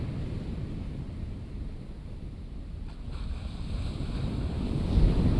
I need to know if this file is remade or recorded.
recorded